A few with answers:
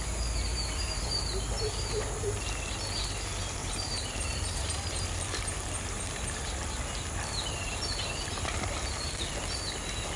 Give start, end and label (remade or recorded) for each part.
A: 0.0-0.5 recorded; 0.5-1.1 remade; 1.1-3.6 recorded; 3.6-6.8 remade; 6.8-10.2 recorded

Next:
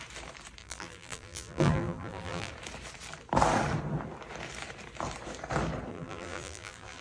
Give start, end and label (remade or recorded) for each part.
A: 0.0-0.6 recorded; 0.6-2.5 remade; 2.5-5.9 recorded; 5.9-7.0 remade

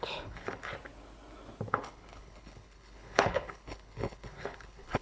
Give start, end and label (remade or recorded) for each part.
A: 0.0-0.7 remade; 0.7-1.7 recorded; 1.7-5.0 remade

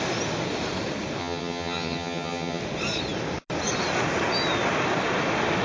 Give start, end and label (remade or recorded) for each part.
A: 0.0-1.2 recorded; 1.2-2.6 remade; 2.6-5.6 recorded